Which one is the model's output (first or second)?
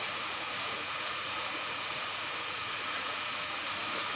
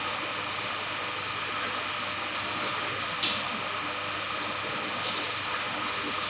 first